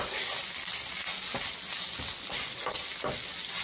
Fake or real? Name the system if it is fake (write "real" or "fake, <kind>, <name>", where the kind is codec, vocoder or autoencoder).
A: real